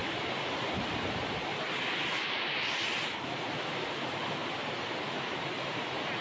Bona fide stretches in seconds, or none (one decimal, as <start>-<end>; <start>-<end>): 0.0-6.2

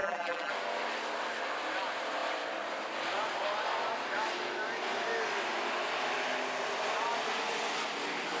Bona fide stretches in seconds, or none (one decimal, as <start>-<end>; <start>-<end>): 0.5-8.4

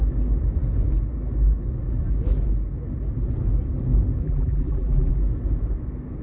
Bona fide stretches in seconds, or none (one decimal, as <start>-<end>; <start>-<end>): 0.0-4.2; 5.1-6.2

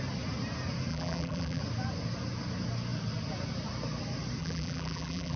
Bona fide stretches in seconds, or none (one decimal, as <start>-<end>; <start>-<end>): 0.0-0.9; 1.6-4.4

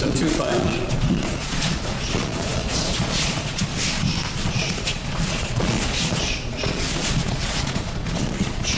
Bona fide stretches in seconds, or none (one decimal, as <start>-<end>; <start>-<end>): 3.7-4.5